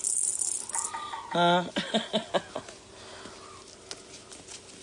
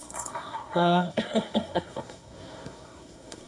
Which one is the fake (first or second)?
second